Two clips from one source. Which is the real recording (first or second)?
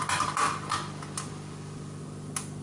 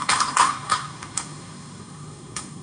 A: first